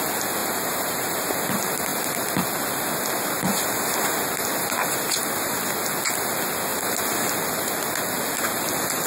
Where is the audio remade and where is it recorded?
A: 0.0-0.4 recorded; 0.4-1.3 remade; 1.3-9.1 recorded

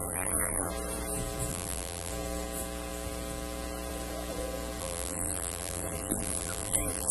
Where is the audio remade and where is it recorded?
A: 0.0-0.7 remade; 0.7-1.5 recorded; 1.5-2.1 remade; 2.1-4.8 recorded; 4.8-7.1 remade

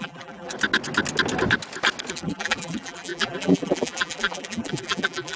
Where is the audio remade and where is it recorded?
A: 0.0-0.5 remade; 0.5-2.1 recorded; 2.1-5.4 remade